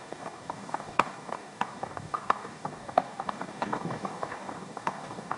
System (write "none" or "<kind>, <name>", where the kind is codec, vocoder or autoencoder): codec, DAC